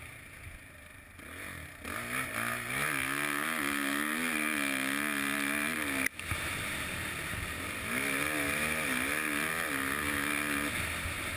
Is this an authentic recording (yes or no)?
yes